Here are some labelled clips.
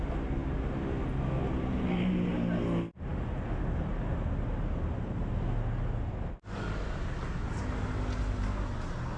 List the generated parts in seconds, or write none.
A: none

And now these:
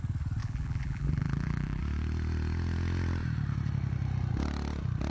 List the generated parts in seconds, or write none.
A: 0.4-1.8

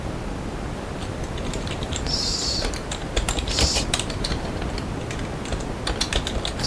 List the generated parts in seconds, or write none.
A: 1.4-4.6

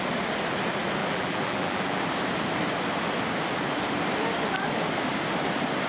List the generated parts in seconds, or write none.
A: 1.0-2.0